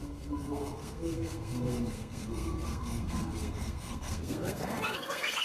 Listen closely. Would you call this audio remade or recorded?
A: remade